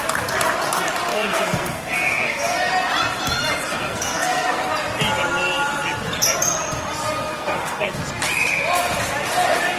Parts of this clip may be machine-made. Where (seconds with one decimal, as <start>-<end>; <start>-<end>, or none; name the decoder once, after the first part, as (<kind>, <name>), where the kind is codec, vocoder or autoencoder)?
1.1-2.7 (codec, SNAC); 3.7-4.7; 7.2-8.0

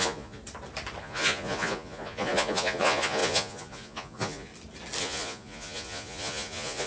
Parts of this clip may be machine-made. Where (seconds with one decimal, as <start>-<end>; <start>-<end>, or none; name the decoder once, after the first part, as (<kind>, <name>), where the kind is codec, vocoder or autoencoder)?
0.0-0.4 (vocoder, Vocos); 1.0-4.5; 5.0-6.9

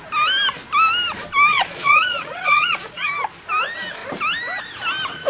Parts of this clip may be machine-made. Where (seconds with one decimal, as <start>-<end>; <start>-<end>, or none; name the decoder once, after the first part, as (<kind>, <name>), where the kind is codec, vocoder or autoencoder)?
1.5-3.1 (vocoder, Vocos)

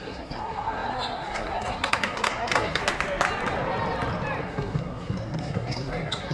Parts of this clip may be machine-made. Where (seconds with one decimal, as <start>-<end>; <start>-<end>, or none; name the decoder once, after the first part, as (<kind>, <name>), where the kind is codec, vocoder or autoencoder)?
0.0-2.8 (codec, SNAC); 4.4-6.3

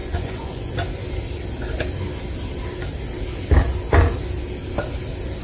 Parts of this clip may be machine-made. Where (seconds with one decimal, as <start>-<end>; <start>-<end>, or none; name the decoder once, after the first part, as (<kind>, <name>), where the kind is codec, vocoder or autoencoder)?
0.0-0.7 (vocoder, Vocos)

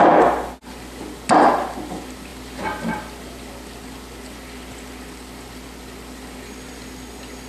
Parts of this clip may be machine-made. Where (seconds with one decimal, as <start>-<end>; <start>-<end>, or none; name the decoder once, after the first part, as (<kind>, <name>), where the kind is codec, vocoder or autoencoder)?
none

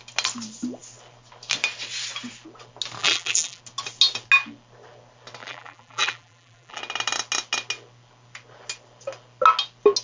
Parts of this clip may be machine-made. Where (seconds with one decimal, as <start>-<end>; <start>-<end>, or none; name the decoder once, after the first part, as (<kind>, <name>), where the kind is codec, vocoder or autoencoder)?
3.0-3.6 (vocoder, BigVGAN v2); 5.4-6.8